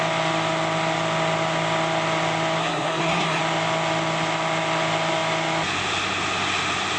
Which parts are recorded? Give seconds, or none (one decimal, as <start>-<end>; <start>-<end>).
0.0-2.6; 3.4-7.0